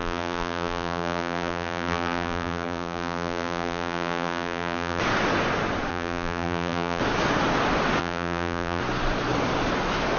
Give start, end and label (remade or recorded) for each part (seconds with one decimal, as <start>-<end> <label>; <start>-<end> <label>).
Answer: 0.0-5.0 remade; 5.0-5.9 recorded; 5.9-7.0 remade; 7.0-8.0 recorded; 8.0-8.8 remade; 8.8-10.2 recorded